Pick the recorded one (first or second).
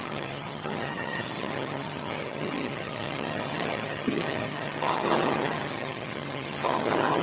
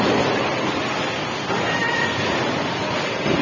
second